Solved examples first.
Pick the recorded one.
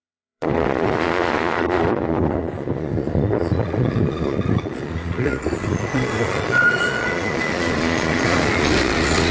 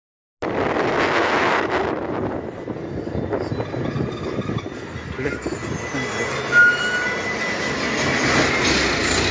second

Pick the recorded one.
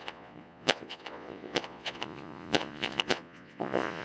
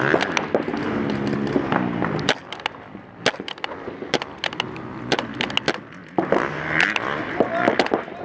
second